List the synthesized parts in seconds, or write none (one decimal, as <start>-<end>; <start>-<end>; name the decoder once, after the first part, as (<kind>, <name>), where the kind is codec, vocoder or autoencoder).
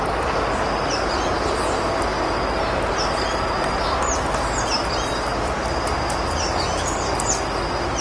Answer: none